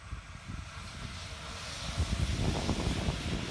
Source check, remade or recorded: recorded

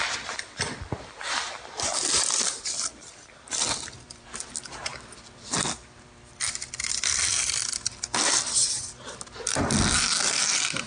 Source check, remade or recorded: remade